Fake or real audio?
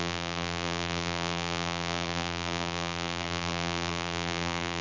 fake